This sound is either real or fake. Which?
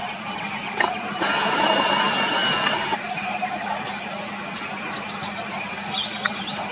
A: real